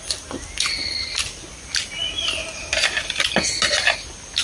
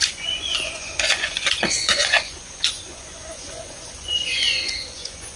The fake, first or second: second